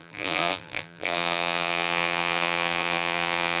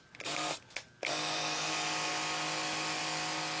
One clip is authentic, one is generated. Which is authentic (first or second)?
second